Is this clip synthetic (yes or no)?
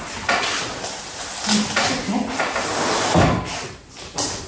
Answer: no